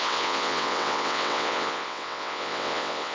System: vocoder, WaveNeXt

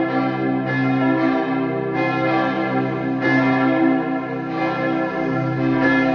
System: none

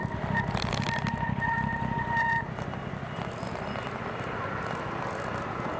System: none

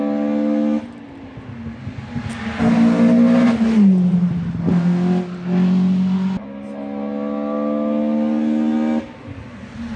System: none